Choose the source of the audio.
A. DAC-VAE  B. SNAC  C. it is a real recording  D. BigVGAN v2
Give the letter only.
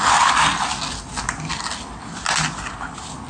C